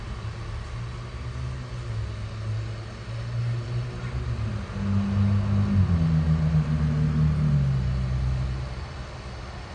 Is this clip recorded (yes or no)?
yes